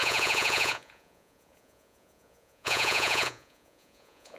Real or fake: fake